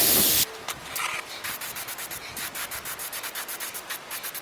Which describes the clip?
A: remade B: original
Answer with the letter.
B